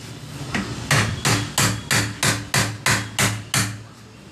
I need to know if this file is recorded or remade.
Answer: recorded